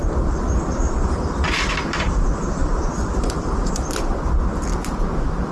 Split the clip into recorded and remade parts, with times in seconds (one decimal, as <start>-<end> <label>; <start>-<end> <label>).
0.0-5.5 recorded